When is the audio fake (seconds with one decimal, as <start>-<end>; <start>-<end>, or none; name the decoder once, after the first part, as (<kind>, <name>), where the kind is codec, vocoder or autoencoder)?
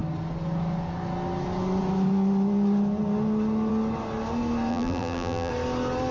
4.7-5.5 (vocoder, BigVGAN v2)